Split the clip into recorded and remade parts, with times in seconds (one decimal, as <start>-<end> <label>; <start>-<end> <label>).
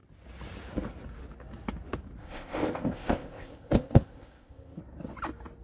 0.0-2.2 recorded; 2.2-4.8 remade; 4.8-5.6 recorded